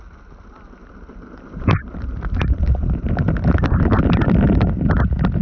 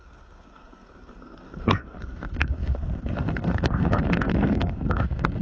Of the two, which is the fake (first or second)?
second